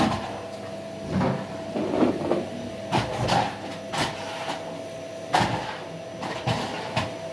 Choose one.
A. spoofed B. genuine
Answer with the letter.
B